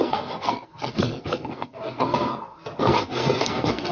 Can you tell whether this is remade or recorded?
remade